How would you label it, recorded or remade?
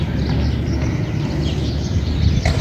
recorded